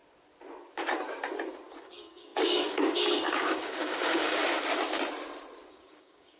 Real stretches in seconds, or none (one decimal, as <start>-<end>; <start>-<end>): 0.0-1.8; 4.4-5.7